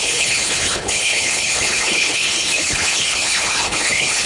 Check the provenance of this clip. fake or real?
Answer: fake